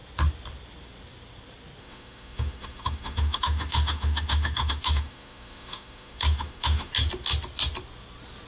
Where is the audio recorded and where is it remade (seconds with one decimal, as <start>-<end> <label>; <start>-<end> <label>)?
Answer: 0.0-1.8 recorded; 1.8-6.9 remade; 6.9-8.5 recorded